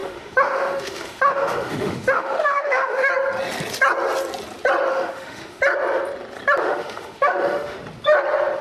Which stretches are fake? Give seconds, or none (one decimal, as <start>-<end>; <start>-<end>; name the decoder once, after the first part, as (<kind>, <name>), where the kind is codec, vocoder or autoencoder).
0.0-3.1 (autoencoder, DAC-VAE); 4.9-5.6; 6.6-7.8